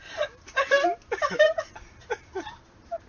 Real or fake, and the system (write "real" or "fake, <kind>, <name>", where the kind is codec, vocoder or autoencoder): real